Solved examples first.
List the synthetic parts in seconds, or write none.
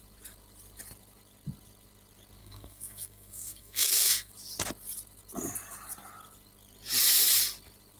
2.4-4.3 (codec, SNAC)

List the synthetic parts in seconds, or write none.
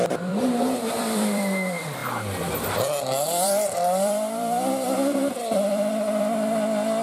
0.0-7.0 (vocoder, BigVGAN v2)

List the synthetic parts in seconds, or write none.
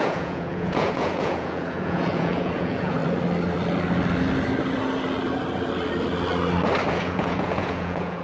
0.0-3.0 (vocoder, Vocos); 6.9-8.2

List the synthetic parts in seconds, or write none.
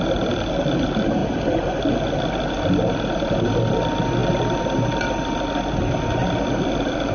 none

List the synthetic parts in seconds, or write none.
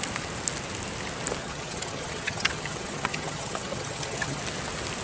1.4-4.4 (vocoder, HiFi-GAN)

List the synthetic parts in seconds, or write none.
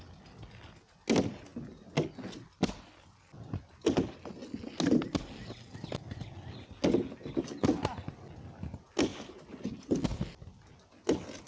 none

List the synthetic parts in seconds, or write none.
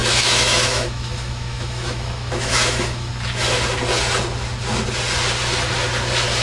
0.0-3.1 (autoencoder, DAC-VAE)